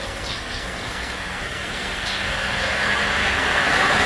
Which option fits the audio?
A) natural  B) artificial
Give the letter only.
B